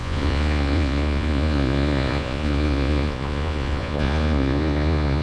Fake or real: fake